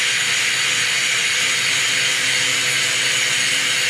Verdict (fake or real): real